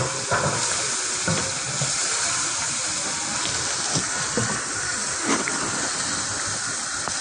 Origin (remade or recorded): recorded